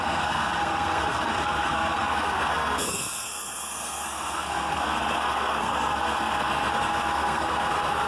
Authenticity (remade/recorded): remade